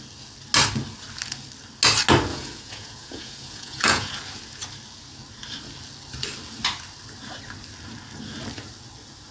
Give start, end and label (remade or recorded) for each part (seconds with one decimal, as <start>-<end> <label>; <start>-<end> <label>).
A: 0.0-2.3 recorded; 2.3-4.1 remade; 4.1-9.3 recorded